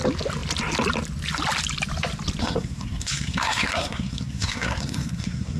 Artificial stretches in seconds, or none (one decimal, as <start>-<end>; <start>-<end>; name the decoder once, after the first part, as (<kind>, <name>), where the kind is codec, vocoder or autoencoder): 2.4-5.6 (codec, SNAC)